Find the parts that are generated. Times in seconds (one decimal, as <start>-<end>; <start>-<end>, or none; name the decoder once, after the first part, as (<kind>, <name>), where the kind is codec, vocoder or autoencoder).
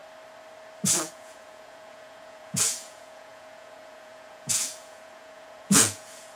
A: 1.1-6.4 (vocoder, Vocos)